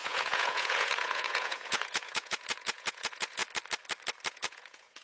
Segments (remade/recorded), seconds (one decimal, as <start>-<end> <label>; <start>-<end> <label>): 0.0-3.4 remade; 3.4-4.3 recorded; 4.3-5.0 remade